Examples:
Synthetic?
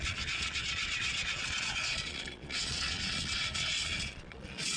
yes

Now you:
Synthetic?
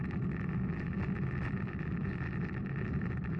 no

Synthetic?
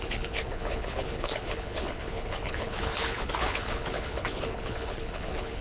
yes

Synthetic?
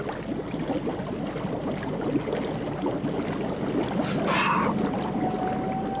no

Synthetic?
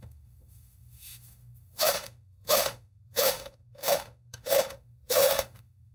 yes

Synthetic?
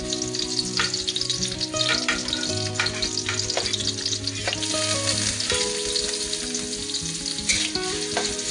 no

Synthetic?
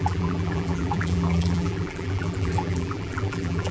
yes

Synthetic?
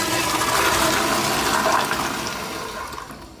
no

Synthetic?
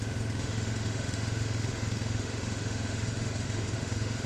yes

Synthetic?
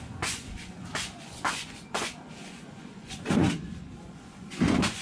yes